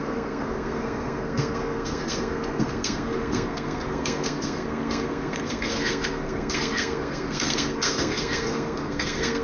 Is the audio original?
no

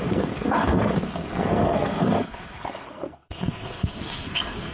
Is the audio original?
no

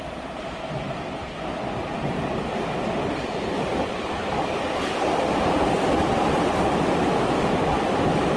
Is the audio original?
no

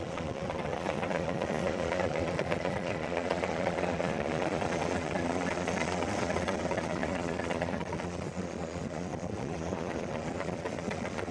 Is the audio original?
no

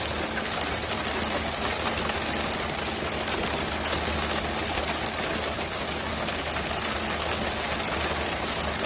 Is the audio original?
yes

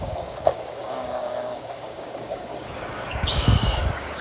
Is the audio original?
no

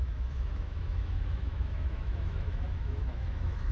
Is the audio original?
no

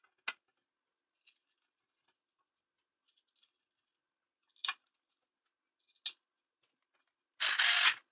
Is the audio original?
yes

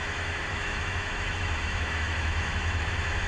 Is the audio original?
no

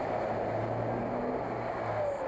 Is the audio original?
yes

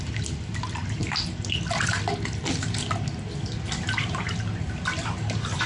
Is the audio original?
yes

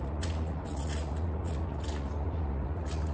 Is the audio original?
no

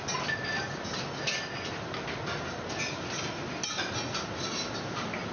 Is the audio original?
yes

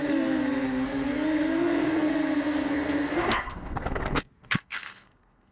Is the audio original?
no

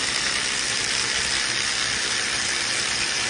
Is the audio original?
yes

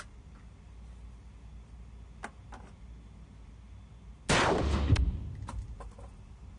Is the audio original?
yes